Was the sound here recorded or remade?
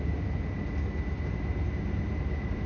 recorded